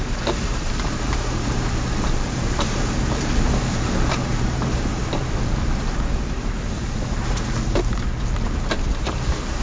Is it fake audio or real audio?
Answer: fake